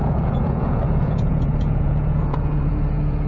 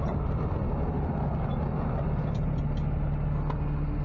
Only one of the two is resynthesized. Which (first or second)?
first